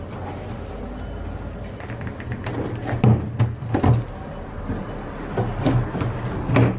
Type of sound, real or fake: real